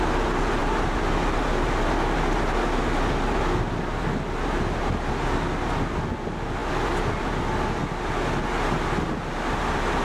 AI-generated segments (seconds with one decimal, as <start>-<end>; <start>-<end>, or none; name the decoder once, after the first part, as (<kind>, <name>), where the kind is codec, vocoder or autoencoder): none